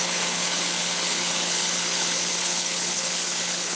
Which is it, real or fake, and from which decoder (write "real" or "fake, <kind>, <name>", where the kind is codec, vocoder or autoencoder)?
fake, codec, HILCodec